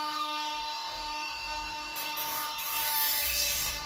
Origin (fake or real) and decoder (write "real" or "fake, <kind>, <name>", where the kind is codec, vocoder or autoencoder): fake, codec, DAC